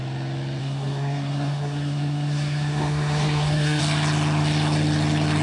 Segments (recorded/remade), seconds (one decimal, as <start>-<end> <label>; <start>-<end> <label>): 0.0-0.6 recorded; 0.6-3.8 remade; 3.8-5.4 recorded